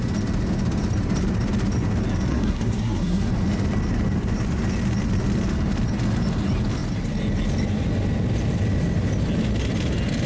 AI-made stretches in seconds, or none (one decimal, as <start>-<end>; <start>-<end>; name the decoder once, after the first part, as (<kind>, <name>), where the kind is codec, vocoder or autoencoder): 2.3-3.3 (codec, SNAC)